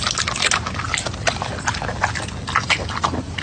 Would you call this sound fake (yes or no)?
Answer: no